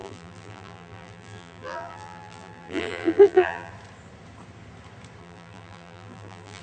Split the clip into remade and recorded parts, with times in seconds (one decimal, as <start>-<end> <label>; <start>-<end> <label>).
0.0-3.7 remade; 3.7-5.2 recorded; 5.2-6.6 remade